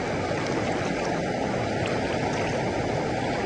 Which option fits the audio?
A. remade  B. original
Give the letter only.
B